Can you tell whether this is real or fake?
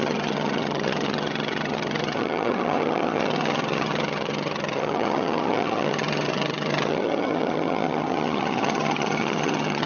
fake